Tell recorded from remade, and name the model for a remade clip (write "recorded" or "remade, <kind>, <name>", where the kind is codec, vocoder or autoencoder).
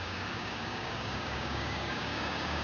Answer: remade, codec, DAC